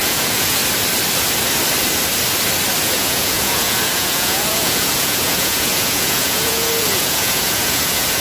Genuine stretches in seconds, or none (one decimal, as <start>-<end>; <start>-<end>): 0.6-2.8

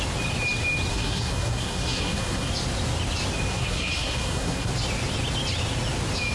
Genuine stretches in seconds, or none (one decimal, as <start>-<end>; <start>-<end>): 0.0-0.9; 2.5-3.5; 4.7-6.3

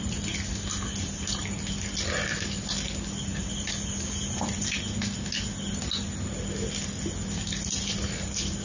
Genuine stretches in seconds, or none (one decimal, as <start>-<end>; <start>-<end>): 0.0-8.6